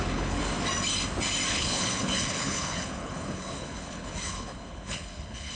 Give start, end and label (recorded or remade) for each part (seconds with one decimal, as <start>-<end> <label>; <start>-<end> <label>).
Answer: 0.0-0.4 remade; 0.4-1.5 recorded; 1.5-5.6 remade